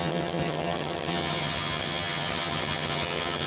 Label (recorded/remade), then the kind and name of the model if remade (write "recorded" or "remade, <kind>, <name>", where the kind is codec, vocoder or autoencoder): remade, vocoder, HiFi-GAN